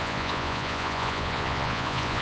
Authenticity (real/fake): fake